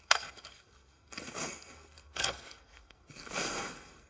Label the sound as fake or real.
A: fake